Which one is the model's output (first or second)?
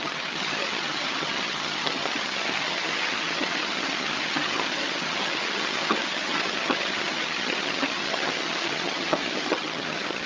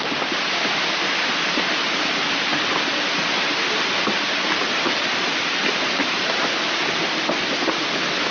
first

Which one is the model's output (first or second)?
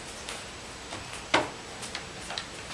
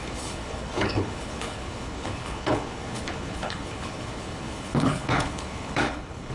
second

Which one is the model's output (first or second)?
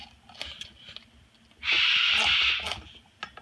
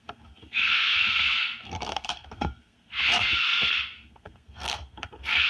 second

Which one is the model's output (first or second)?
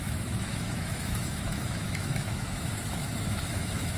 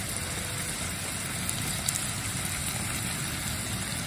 first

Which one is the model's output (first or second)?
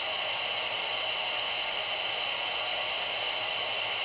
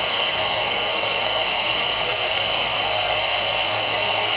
second